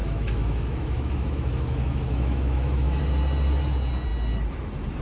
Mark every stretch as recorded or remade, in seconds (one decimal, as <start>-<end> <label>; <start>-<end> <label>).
0.0-3.0 remade; 3.0-5.0 recorded